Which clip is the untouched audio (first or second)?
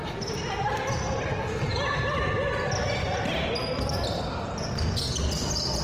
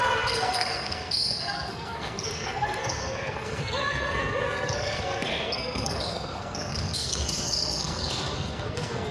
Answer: first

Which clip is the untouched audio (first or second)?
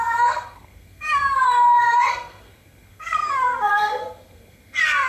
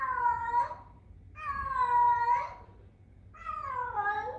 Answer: second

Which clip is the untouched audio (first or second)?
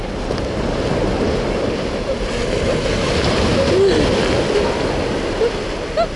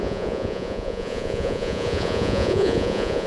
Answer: first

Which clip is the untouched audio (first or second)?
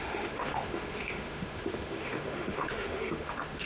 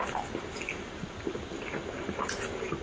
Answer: second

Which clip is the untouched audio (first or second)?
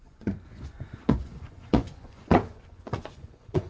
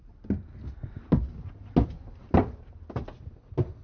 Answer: second